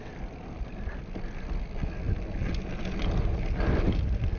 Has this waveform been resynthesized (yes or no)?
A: no